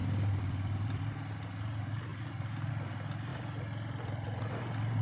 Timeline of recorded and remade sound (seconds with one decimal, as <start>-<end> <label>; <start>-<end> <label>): 0.0-1.0 remade; 1.0-3.3 recorded; 3.3-4.6 remade; 4.6-5.0 recorded